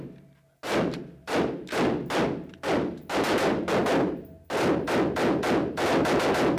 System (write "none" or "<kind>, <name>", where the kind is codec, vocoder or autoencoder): none